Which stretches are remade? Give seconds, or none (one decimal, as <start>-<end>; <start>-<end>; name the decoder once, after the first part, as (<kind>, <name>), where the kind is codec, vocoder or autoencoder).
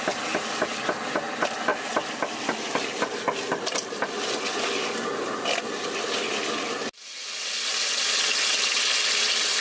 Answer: none